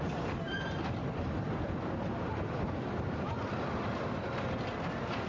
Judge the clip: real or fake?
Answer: real